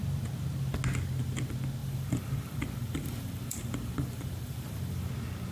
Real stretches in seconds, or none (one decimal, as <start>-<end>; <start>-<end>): 0.0-1.8; 5.1-5.5